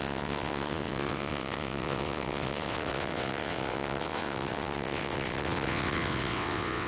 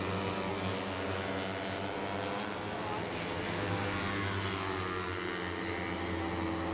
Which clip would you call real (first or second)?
second